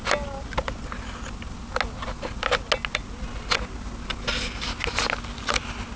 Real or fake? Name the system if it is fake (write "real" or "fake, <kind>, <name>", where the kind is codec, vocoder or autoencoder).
real